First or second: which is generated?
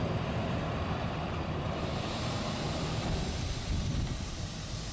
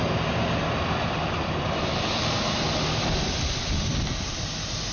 first